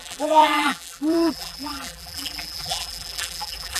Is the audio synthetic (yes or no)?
yes